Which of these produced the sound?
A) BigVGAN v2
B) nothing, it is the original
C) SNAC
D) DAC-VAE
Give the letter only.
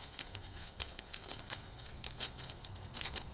C